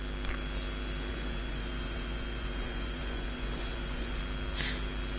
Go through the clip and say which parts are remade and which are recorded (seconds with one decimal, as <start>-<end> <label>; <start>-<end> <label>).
0.0-1.1 recorded; 1.1-4.2 remade; 4.2-5.2 recorded